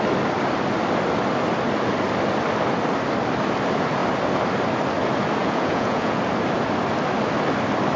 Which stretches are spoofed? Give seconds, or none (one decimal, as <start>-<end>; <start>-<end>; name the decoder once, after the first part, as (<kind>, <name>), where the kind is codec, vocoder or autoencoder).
5.4-6.2 (vocoder, Vocos)